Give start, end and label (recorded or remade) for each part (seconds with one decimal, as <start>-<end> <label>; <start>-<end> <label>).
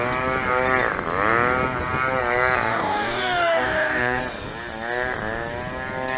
0.0-2.7 recorded; 2.7-4.2 remade; 4.2-6.2 recorded